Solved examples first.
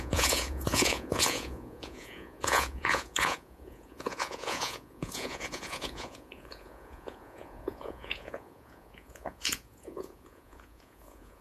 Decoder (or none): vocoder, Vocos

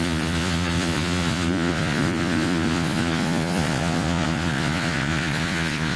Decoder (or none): vocoder, Vocos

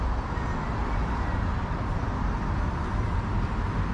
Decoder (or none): none